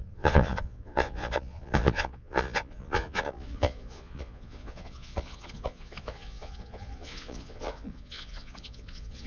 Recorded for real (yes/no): no